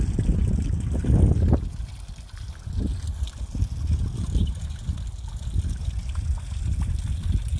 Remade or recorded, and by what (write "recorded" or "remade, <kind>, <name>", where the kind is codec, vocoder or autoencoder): recorded